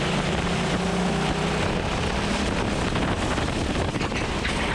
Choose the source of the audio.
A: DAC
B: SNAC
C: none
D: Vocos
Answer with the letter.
C